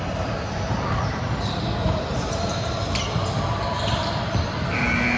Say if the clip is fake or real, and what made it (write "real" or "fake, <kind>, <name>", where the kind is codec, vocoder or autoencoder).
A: real